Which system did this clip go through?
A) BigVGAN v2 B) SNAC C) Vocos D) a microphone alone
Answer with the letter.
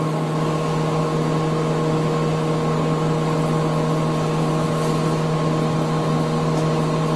D